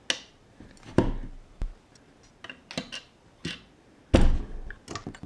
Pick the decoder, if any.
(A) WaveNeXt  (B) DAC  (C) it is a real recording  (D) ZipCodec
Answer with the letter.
C